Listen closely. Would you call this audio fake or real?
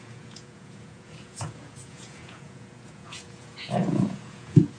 fake